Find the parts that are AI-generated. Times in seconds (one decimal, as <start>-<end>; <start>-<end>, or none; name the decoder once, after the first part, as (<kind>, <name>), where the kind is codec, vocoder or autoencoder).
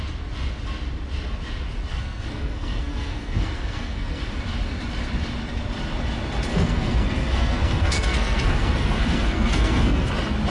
1.9-4.2 (codec, SNAC); 6.5-10.1